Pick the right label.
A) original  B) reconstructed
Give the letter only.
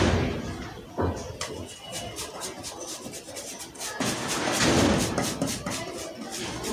A